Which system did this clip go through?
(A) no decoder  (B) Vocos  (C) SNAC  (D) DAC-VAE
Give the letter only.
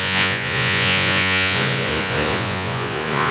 B